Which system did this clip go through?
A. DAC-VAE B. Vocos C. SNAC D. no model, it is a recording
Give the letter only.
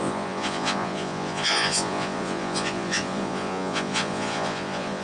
B